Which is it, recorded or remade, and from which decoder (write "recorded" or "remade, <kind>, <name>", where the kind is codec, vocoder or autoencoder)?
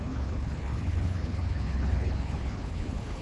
remade, codec, HILCodec